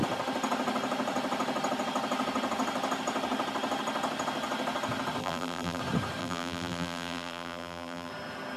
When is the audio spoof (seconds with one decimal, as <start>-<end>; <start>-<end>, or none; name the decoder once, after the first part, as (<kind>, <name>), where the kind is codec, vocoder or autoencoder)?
5.2-5.8 (vocoder, BigVGAN v2); 6.2-8.1